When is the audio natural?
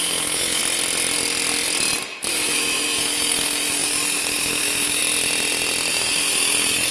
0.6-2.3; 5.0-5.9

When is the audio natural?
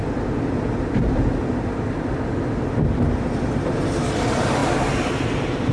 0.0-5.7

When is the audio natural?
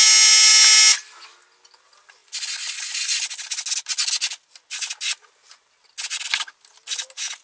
0.0-7.4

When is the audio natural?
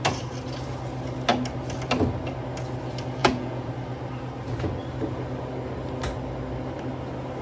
0.0-3.2; 3.7-7.4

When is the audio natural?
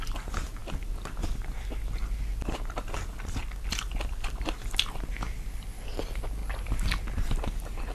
0.0-3.4; 4.4-7.9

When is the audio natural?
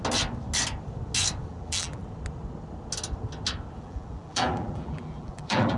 0.0-1.5; 2.0-3.8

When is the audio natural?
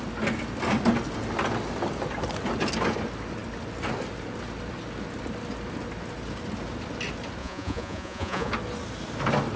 0.0-7.4; 8.5-9.6